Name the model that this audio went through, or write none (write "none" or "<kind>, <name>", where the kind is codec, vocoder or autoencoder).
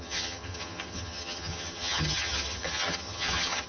vocoder, HiFi-GAN